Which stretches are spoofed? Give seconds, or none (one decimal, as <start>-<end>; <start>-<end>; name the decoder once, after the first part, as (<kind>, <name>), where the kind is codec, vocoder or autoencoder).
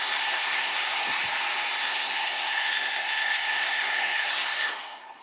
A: 0.0-1.2 (codec, SNAC); 1.8-5.2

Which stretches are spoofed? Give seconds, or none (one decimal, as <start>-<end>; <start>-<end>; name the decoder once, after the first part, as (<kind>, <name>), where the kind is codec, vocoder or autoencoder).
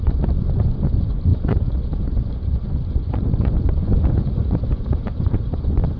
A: 0.0-6.0 (vocoder, Vocos)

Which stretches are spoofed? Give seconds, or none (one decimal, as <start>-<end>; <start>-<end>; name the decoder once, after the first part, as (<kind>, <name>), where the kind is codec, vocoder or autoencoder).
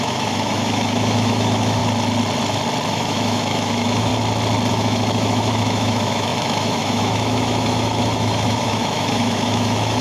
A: 0.0-1.8 (autoencoder, DAC-VAE); 2.9-4.1; 4.7-10.0